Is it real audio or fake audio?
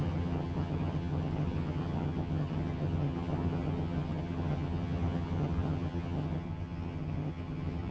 fake